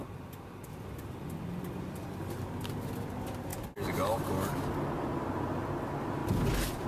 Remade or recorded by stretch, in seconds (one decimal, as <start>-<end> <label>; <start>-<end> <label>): 0.0-2.5 remade; 2.5-6.2 recorded; 6.2-6.9 remade